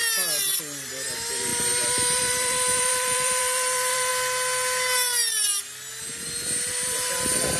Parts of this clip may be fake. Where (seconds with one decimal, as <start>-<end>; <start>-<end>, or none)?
0.6-4.1; 5.9-7.6